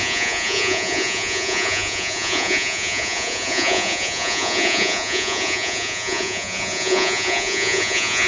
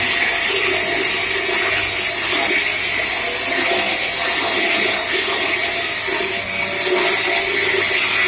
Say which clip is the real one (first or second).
second